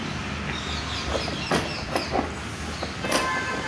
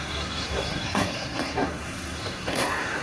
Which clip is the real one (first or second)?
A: first